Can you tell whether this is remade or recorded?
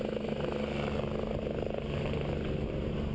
recorded